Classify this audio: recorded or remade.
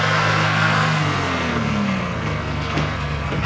remade